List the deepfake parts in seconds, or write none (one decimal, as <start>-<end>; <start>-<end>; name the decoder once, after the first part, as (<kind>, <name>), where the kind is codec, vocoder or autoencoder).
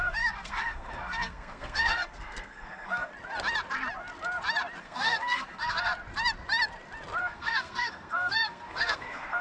0.0-3.1 (codec, SNAC); 4.8-5.9; 7.2-9.4